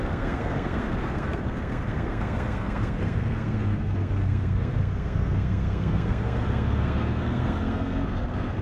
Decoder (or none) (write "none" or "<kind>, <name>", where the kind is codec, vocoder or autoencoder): codec, SNAC